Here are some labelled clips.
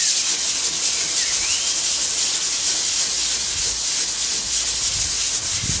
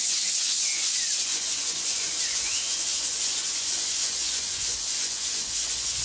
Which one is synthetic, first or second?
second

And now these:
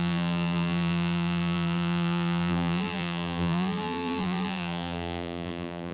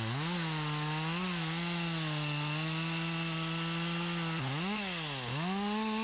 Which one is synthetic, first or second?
first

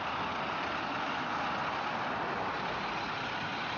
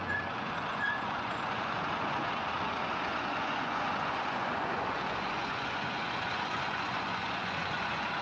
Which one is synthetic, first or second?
second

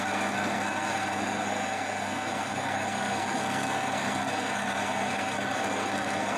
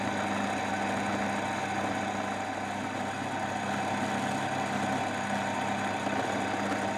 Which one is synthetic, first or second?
first